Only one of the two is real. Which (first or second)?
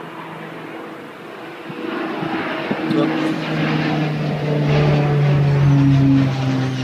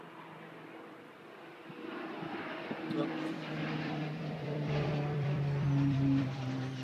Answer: first